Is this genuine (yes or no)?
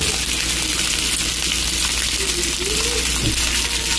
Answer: yes